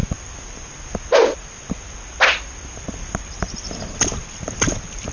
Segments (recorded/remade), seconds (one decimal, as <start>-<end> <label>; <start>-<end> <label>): 0.0-5.1 recorded